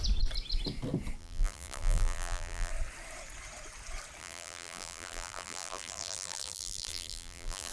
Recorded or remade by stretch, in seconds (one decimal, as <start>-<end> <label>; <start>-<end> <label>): 0.0-1.2 recorded; 1.2-2.7 remade; 2.7-4.2 recorded; 4.2-7.7 remade